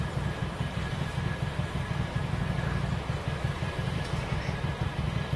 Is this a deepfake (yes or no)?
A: yes